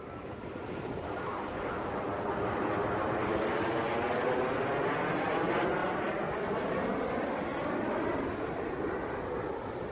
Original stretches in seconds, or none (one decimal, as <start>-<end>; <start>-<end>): 0.0-5.8; 6.8-9.9

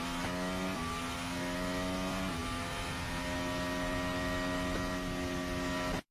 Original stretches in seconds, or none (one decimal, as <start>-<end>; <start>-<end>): 0.0-6.1